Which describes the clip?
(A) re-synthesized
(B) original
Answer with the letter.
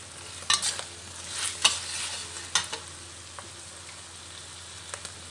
B